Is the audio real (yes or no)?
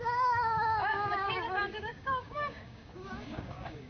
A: no